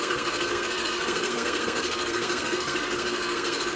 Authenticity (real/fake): fake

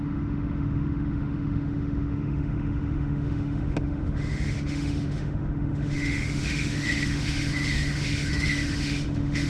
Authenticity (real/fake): fake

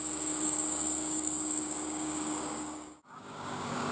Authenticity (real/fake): fake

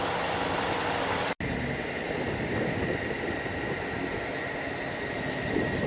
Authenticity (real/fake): real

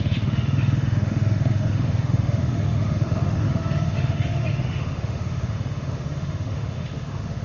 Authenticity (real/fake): fake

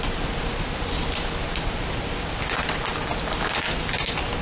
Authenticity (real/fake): real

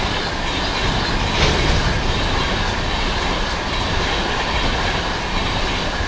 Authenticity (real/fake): real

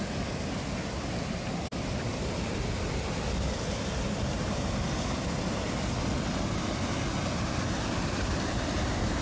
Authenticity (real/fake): real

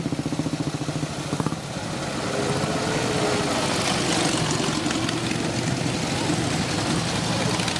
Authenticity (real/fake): real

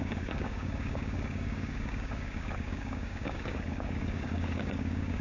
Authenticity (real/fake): fake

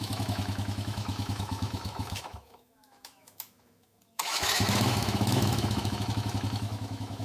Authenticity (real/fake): fake